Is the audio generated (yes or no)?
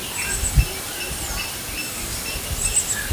no